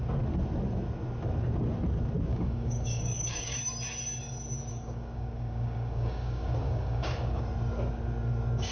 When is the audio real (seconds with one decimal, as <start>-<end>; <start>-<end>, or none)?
0.0-2.3; 3.6-4.7; 7.4-8.7